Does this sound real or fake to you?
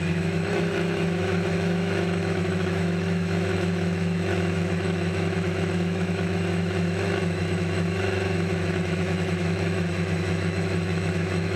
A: fake